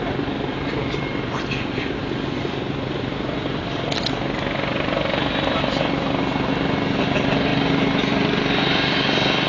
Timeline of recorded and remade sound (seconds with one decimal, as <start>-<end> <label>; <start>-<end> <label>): 0.0-9.5 recorded

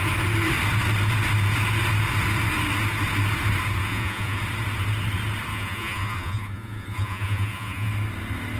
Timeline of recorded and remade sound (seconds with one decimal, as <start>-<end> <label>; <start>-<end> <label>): 0.0-3.8 recorded; 3.8-4.4 remade; 4.4-5.5 recorded; 5.5-7.9 remade; 7.9-8.6 recorded

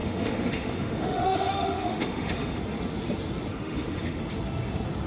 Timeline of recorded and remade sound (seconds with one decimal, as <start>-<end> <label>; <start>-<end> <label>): 0.0-2.6 remade; 2.6-3.5 recorded; 3.5-4.2 remade; 4.2-5.1 recorded

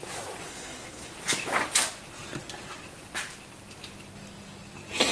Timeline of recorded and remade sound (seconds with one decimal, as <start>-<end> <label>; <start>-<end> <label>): 0.0-0.5 recorded; 0.5-1.1 remade; 1.1-5.1 recorded